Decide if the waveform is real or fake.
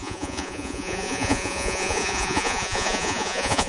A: fake